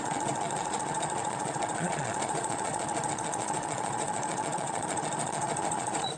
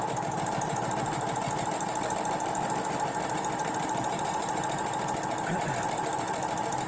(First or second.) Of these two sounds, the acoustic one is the second